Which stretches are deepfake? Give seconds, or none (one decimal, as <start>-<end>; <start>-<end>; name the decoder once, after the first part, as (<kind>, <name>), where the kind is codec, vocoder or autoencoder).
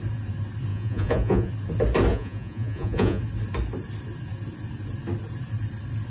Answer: 0.7-1.5 (vocoder, Vocos); 2.1-3.2